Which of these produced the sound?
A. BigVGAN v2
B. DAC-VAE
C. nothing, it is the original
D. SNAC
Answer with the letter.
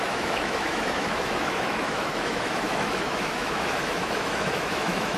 B